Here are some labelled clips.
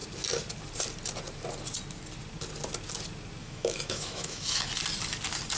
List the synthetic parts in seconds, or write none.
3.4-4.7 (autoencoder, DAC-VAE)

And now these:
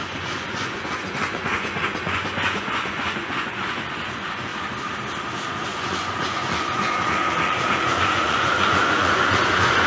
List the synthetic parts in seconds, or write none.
0.0-4.5 (vocoder, Vocos); 5.5-9.9